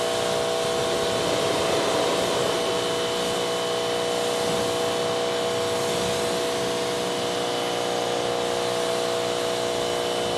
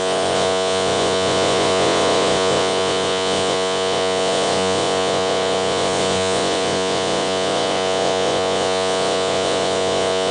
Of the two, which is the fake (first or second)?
second